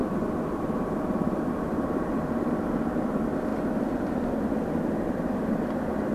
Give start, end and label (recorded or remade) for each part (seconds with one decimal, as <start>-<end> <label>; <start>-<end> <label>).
0.0-2.7 remade; 2.7-3.5 recorded; 3.5-6.1 remade